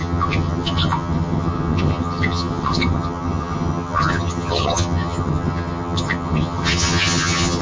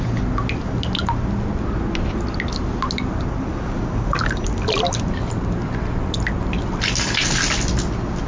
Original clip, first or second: second